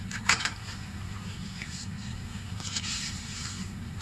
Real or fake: fake